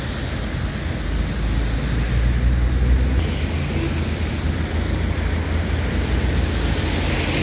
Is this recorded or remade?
recorded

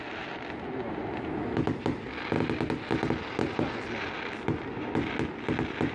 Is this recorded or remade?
recorded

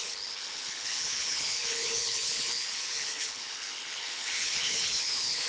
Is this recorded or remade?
remade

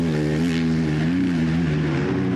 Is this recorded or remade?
recorded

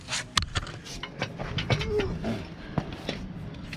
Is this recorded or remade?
recorded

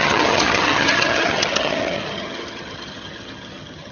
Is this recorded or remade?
remade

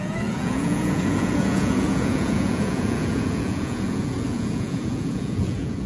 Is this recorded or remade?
remade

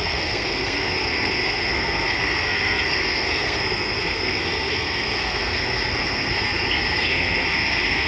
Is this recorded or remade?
remade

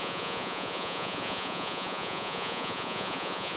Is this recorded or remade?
remade